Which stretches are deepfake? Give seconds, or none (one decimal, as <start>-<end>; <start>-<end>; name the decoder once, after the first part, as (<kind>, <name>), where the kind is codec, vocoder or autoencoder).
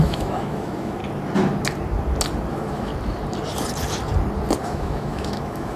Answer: 0.0-1.0 (autoencoder, DAC-VAE); 2.5-2.9; 4.6-5.8